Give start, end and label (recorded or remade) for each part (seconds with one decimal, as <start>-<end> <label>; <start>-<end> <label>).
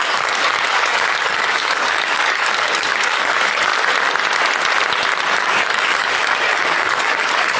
0.0-3.7 remade; 3.7-5.3 recorded; 5.3-7.6 remade